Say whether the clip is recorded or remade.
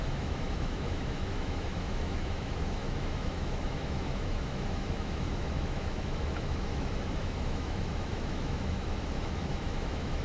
remade